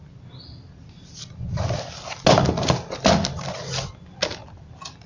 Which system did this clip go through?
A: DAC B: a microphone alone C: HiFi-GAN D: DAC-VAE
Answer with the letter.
B